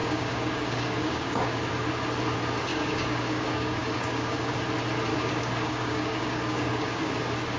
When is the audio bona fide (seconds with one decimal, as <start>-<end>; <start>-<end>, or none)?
1.7-2.7; 4.6-5.1; 7.1-7.6

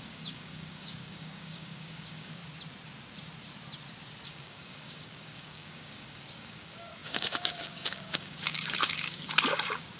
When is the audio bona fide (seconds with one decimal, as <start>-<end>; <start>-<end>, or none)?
2.4-4.2

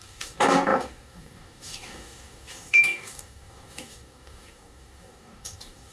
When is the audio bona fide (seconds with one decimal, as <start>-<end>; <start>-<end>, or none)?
none

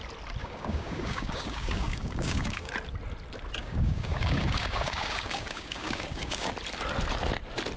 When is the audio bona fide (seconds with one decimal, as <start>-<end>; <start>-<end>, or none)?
0.0-0.4; 2.7-3.6; 6.5-7.8

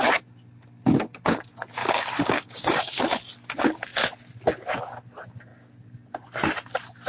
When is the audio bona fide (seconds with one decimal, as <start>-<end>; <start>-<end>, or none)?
0.0-1.8; 3.0-7.1

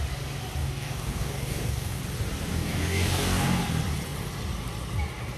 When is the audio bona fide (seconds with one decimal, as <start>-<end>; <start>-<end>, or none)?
0.0-0.6; 2.0-2.5; 3.6-5.4

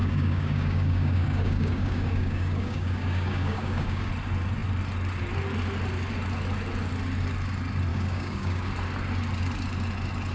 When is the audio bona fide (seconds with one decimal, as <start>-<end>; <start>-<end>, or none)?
4.1-7.9; 8.7-10.3